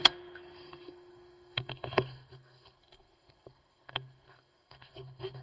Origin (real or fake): fake